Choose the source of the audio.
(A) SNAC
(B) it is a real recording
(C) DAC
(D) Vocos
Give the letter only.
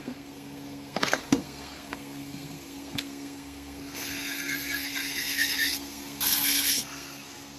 A